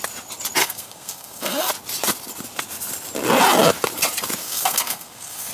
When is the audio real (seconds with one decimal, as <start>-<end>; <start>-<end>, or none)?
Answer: 0.0-0.6; 1.7-4.4